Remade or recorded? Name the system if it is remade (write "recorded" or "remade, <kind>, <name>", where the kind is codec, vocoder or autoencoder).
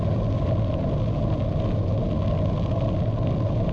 recorded